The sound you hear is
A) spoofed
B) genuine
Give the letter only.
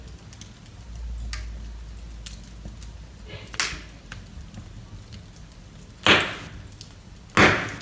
B